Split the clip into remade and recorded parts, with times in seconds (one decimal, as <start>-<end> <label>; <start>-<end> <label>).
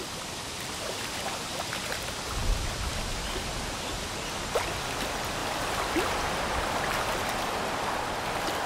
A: 0.0-5.4 recorded; 5.4-7.9 remade; 7.9-8.7 recorded